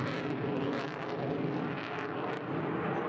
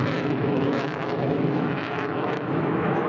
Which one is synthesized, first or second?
second